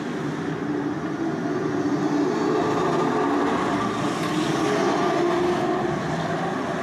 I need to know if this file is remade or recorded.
recorded